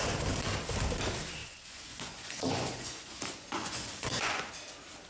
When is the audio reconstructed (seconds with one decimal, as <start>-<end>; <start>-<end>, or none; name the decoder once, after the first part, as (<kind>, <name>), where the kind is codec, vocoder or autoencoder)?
1.4-4.5 (vocoder, Vocos)